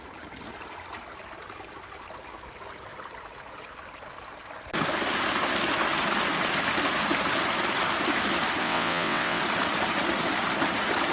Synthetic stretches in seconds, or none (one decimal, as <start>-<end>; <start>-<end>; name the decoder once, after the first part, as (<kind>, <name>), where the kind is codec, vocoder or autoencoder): 8.6-9.4 (vocoder, WaveNeXt)